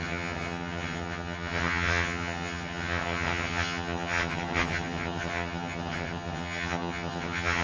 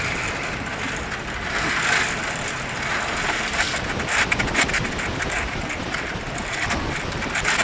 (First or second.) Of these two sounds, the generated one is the first